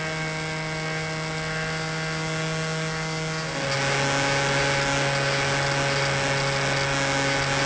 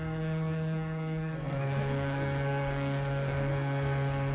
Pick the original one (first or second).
first